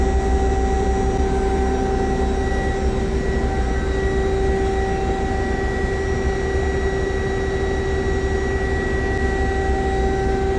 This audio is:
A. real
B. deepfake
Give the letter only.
A